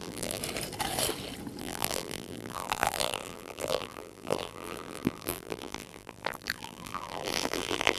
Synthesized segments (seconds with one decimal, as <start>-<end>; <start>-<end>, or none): 0.0-0.4; 1.6-8.0